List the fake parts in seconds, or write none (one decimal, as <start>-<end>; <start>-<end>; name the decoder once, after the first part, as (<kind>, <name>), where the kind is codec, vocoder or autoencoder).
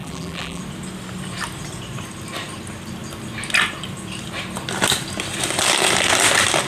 0.0-0.6 (vocoder, BigVGAN v2)